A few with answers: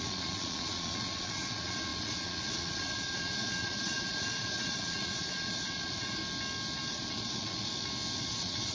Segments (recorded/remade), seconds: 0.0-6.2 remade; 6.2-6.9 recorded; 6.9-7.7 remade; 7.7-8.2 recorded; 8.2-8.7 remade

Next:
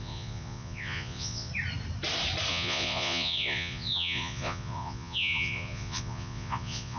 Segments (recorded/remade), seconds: 0.0-1.5 remade; 1.5-2.5 recorded; 2.5-7.0 remade